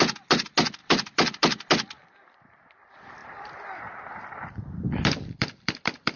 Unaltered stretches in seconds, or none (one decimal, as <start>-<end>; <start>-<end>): 0.0-0.8; 1.4-3.2

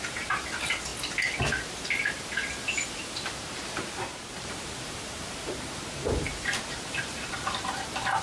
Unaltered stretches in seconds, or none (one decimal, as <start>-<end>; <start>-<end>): 0.9-3.1